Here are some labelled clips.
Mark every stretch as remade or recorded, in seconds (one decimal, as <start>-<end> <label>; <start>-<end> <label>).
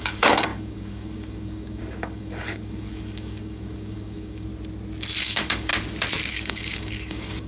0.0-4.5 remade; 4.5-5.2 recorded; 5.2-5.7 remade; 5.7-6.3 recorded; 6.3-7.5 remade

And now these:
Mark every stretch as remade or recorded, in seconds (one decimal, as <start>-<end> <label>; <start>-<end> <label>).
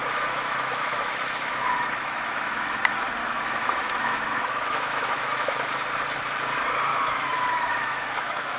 0.0-2.8 remade; 2.8-3.2 recorded; 3.2-5.7 remade; 5.7-6.9 recorded; 6.9-8.6 remade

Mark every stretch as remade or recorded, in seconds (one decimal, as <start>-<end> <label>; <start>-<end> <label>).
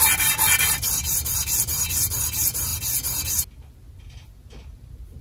0.0-5.2 recorded